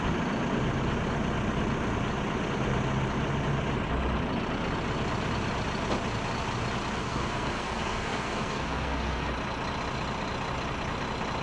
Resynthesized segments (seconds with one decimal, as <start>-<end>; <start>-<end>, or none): 7.0-9.3